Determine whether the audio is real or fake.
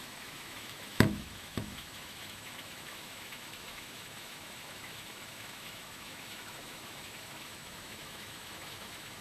fake